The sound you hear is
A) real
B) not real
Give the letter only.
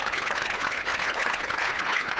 B